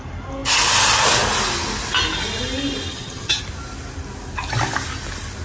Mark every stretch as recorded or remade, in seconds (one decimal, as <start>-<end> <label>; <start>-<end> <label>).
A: 0.0-2.9 recorded; 2.9-3.4 remade; 3.4-5.4 recorded